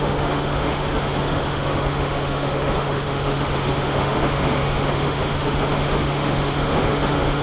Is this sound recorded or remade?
remade